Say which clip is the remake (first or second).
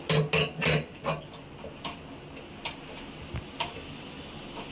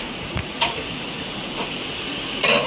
second